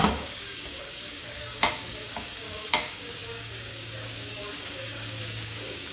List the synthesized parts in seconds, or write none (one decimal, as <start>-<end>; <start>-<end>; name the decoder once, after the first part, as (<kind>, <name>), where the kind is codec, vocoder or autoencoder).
0.0-5.9 (codec, DAC)

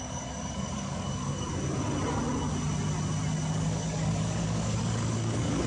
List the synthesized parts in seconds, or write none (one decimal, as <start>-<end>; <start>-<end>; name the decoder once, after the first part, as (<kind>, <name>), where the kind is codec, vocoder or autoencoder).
0.0-1.5 (codec, DAC); 3.5-5.7

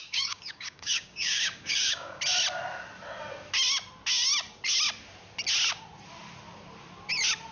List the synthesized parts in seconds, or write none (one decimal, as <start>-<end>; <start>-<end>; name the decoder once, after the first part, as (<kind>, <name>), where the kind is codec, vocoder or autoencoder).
0.0-2.2 (codec, DAC)

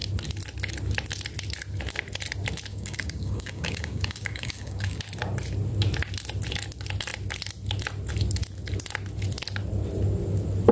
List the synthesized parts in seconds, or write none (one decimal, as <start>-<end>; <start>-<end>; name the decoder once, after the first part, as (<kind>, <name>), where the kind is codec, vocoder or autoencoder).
2.7-5.0 (codec, DAC)

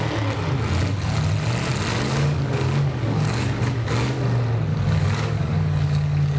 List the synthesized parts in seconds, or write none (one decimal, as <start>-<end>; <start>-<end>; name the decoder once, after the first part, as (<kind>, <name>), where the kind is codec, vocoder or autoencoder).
1.9-4.2 (codec, DAC); 4.7-6.4